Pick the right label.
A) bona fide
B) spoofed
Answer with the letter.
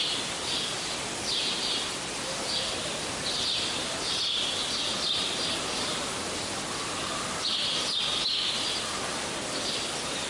A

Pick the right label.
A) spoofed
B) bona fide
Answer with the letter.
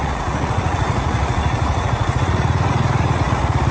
A